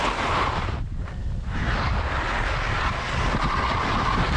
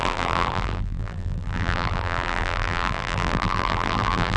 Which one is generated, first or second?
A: second